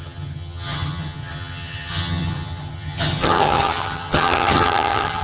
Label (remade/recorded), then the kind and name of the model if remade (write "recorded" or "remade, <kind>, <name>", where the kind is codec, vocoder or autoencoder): remade, vocoder, HiFi-GAN